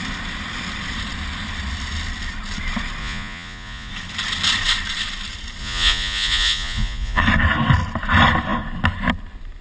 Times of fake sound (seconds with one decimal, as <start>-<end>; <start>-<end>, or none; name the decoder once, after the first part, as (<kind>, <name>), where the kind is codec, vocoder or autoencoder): 3.0-3.9 (vocoder, Vocos); 5.6-7.2